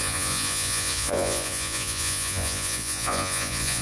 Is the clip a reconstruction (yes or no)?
yes